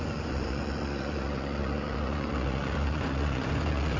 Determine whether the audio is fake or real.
fake